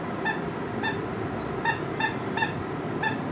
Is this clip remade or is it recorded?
recorded